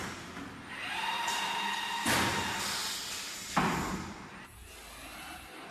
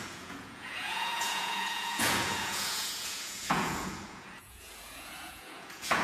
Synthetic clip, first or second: second